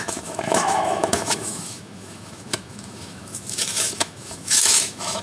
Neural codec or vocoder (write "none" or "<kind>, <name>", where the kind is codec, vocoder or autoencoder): autoencoder, DAC-VAE